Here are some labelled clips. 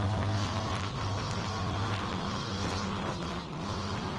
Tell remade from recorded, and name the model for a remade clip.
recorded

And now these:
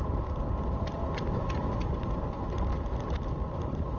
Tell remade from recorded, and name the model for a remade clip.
recorded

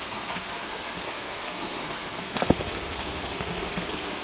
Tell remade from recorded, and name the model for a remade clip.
remade, codec, SNAC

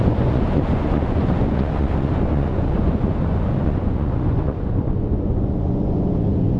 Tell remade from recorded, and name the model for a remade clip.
remade, vocoder, Vocos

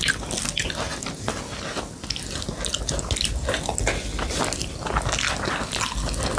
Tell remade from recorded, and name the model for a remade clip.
recorded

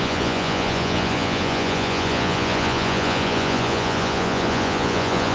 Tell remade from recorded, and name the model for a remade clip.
remade, vocoder, Vocos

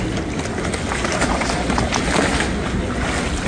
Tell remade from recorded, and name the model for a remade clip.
recorded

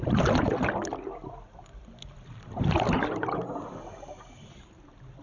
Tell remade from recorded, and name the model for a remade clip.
recorded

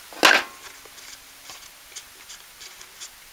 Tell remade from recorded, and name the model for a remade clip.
recorded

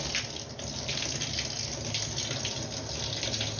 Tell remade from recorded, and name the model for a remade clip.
recorded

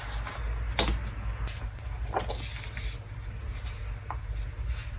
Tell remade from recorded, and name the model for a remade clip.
recorded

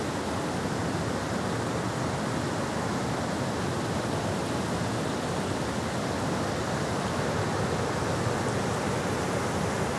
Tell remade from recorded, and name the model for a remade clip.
recorded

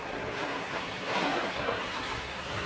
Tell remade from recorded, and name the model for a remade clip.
remade, codec, SNAC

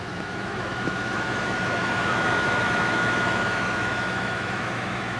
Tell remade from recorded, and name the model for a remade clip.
remade, autoencoder, DAC-VAE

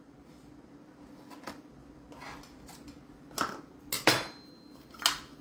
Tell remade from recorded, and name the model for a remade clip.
recorded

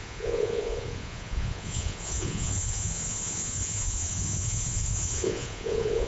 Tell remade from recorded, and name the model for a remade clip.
remade, vocoder, Vocos